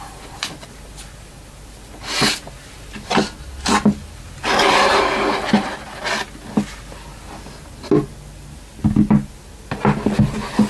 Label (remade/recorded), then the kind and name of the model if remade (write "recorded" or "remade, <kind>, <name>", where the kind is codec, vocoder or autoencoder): recorded